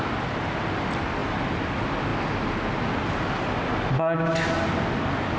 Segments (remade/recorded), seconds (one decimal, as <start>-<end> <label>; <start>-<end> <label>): 0.0-5.4 recorded